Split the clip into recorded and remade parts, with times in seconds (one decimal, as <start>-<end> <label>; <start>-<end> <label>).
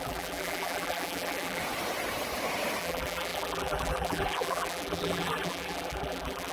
0.0-1.6 remade; 1.6-2.8 recorded; 2.8-6.5 remade